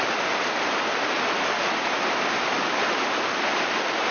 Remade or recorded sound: recorded